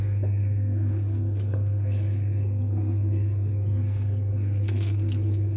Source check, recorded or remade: remade